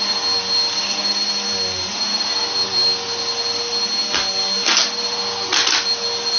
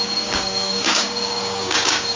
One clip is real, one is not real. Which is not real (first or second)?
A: second